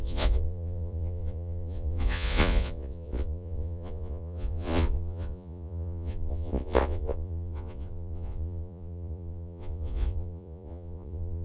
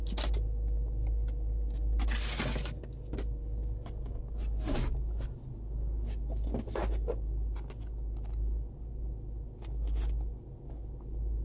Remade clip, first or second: first